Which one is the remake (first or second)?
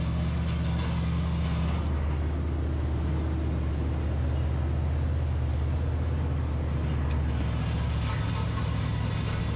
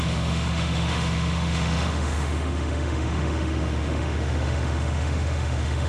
second